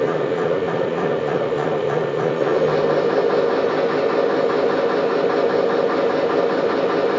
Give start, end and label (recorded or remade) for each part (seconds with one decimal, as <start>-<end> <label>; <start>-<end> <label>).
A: 0.0-2.7 remade; 2.7-7.2 recorded